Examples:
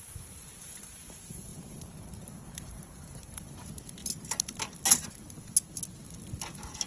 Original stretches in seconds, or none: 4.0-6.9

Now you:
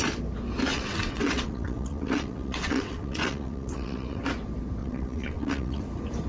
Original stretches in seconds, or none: 0.0-0.7; 4.2-4.8; 5.8-6.3

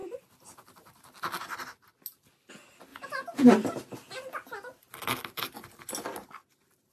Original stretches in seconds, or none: 0.0-2.9; 3.5-6.9